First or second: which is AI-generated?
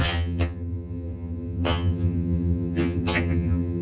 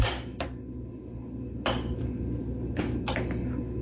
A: first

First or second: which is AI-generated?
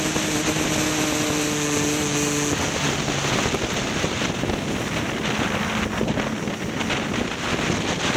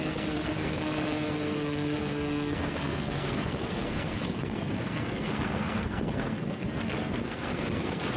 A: second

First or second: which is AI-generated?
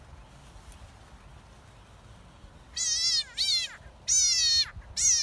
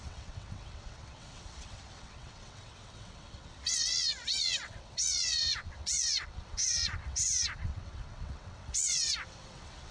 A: second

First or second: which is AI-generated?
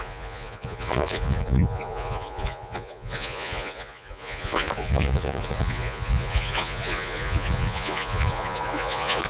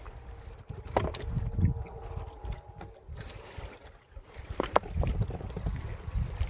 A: first